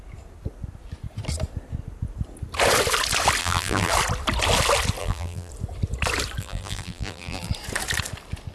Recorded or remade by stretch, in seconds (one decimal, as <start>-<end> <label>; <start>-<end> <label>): 0.0-3.4 recorded; 3.4-3.9 remade; 3.9-5.0 recorded; 5.0-5.5 remade; 5.5-6.4 recorded; 6.4-7.5 remade; 7.5-8.5 recorded